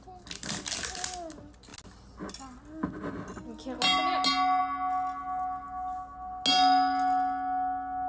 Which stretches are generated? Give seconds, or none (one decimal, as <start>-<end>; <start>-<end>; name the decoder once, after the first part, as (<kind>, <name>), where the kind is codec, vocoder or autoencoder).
none

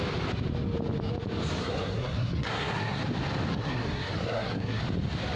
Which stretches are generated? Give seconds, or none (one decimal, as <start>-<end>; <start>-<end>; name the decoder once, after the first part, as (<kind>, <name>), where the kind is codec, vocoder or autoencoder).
1.6-3.0 (codec, SNAC); 3.5-4.8

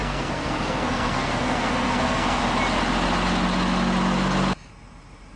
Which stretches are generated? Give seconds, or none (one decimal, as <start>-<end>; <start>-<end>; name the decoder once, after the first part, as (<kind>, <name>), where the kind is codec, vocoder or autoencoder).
0.0-2.4 (codec, SNAC)

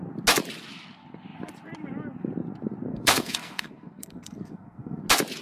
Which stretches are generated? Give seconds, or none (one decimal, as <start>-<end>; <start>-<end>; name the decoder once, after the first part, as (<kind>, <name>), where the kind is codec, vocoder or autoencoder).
2.9-5.0 (codec, SNAC)

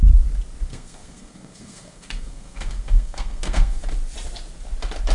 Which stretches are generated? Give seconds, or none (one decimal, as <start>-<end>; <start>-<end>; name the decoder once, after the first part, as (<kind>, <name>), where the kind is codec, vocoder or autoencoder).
0.7-3.8 (codec, SNAC)